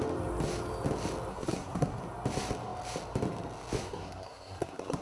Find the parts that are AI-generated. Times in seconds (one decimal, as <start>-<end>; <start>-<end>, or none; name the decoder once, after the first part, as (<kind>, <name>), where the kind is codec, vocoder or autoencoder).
1.3-2.0 (codec, SNAC); 3.8-5.0